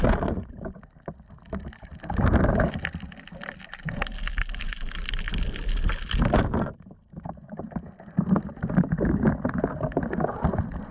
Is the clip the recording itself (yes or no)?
yes